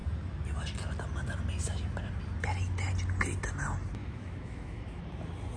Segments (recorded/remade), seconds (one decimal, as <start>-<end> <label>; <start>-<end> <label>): 0.0-4.0 recorded; 4.0-5.0 remade; 5.0-5.6 recorded